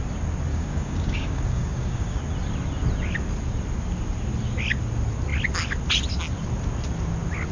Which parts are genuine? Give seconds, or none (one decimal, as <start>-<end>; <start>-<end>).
0.0-0.5; 2.2-7.5